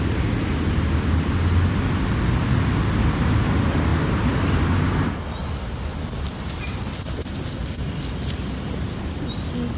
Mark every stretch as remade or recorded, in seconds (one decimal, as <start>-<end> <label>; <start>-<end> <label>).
0.0-9.8 recorded